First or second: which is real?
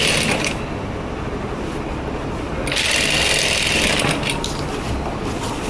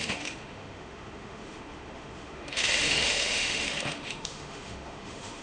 first